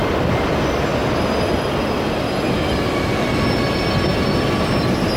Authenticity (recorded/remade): recorded